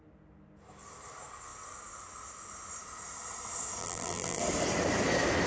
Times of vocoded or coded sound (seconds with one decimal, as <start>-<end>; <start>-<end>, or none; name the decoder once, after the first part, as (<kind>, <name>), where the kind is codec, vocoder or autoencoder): 3.8-4.4 (vocoder, BigVGAN v2)